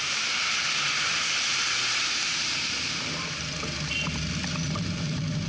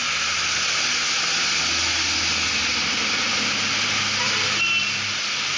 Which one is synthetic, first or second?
first